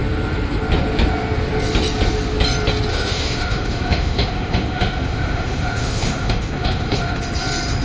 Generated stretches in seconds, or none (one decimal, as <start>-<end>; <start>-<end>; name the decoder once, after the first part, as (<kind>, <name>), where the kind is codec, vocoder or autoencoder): 2.9-7.2 (autoencoder, DAC-VAE)